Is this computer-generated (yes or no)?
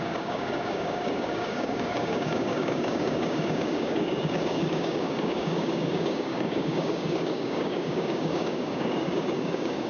yes